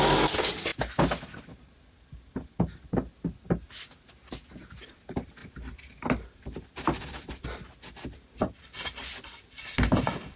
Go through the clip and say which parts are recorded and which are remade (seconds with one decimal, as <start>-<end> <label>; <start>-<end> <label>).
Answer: 0.0-10.4 recorded